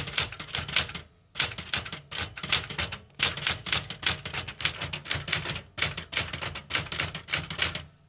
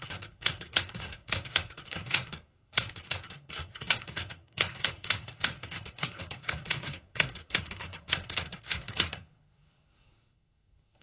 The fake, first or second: second